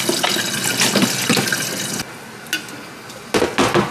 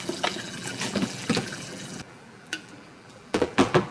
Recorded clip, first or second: first